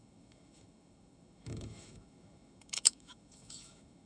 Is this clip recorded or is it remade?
remade